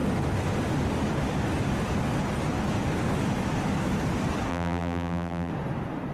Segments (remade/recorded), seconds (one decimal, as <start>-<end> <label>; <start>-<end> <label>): 0.0-4.5 recorded; 4.5-5.5 remade; 5.5-6.1 recorded